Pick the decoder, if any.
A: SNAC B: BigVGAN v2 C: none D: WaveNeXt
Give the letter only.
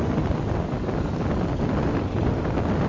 C